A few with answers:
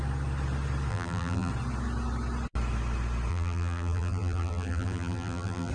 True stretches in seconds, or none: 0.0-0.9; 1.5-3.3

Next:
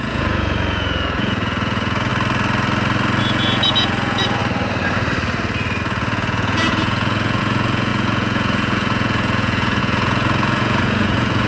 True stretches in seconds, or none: 2.1-3.2; 4.4-5.8

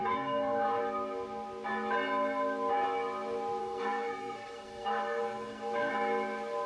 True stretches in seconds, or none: 0.8-3.6; 5.9-6.7

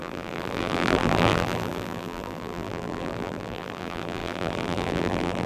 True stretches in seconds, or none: none

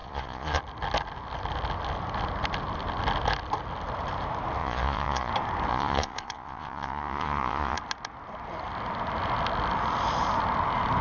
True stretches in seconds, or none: 0.6-4.6; 5.3-5.7; 7.8-11.0

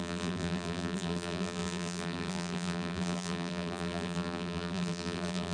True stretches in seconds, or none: none

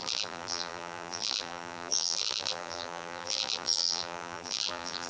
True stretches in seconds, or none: none

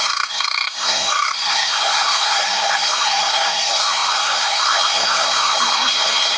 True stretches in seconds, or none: none